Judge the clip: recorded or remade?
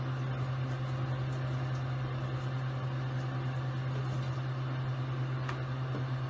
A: recorded